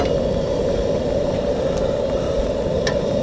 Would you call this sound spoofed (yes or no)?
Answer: no